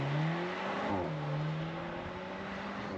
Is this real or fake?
real